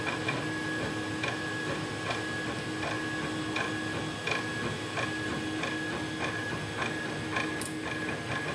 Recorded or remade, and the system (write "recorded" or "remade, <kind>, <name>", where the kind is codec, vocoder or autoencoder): recorded